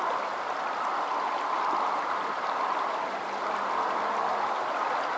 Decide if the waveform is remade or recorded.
recorded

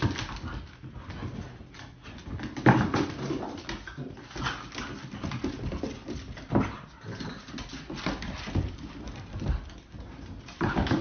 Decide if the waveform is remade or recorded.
recorded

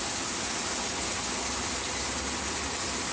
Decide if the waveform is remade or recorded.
recorded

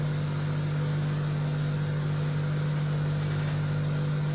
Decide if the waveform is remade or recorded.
recorded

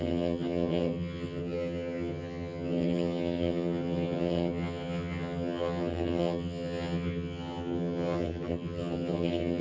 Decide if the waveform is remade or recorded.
remade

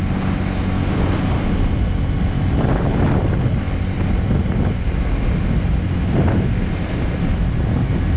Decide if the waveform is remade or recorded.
recorded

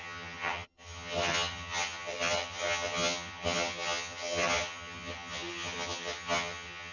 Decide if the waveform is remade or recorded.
remade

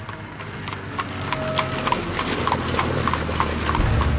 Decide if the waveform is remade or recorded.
recorded